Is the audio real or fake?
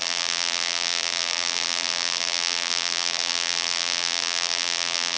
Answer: fake